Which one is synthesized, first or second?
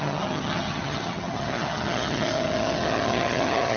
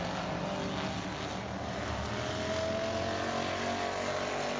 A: first